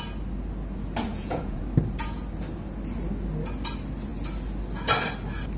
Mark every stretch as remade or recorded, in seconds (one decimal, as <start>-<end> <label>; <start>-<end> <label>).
0.0-1.1 recorded; 1.1-1.6 remade; 1.6-5.6 recorded

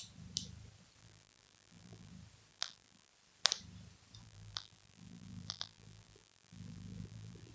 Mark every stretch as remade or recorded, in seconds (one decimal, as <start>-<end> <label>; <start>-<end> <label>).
0.0-1.0 recorded; 1.0-2.1 remade; 2.1-2.5 recorded; 2.5-3.1 remade; 3.1-4.2 recorded; 4.2-7.5 remade